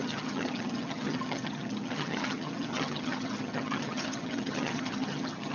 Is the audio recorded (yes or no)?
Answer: no